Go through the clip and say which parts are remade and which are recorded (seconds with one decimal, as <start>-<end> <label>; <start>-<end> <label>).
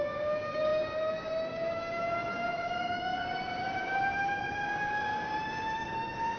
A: 0.0-6.4 remade